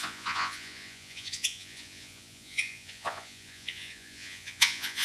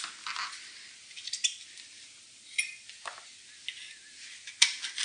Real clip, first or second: second